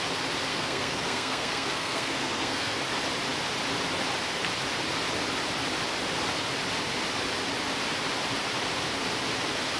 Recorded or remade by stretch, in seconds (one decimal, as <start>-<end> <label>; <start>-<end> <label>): 0.0-0.5 recorded; 0.5-2.8 remade; 2.8-9.8 recorded

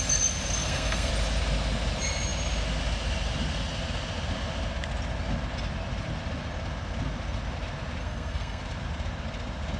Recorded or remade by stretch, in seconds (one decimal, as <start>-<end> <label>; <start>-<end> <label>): 0.0-0.6 recorded; 0.6-1.1 remade; 1.1-8.0 recorded; 8.0-8.6 remade; 8.6-9.8 recorded

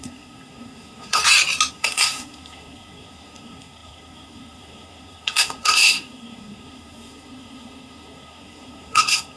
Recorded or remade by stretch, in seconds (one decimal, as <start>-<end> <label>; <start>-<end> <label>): 0.0-1.2 remade; 1.2-1.7 recorded; 1.7-9.4 remade

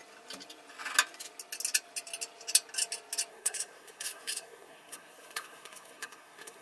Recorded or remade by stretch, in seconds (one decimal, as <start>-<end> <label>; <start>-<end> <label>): 0.0-3.3 recorded; 3.3-6.6 remade